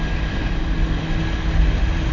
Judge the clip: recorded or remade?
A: recorded